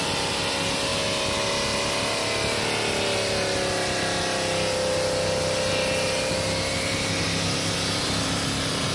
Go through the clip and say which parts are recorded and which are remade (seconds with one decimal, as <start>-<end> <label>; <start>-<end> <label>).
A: 0.0-8.9 recorded